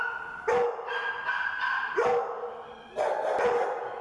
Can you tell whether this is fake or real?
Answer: real